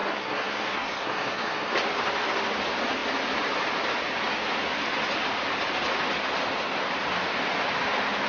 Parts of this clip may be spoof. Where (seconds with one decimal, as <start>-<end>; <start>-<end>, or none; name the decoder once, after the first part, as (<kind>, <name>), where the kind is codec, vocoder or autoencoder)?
0.0-1.7 (codec, SNAC)